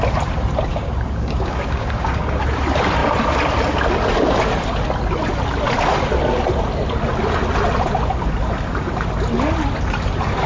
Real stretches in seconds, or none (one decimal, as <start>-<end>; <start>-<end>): 0.0-0.7; 2.4-10.5